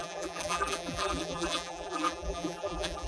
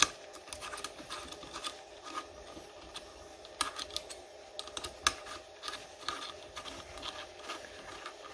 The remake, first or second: first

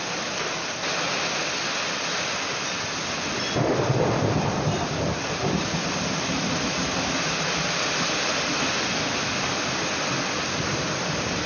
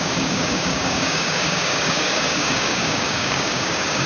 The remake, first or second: second